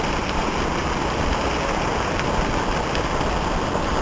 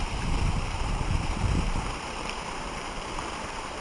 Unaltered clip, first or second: first